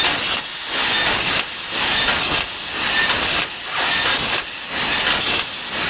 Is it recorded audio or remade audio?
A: recorded